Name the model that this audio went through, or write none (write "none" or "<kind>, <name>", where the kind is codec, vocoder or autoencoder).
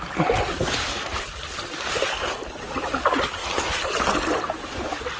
none